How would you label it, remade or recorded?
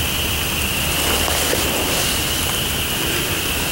recorded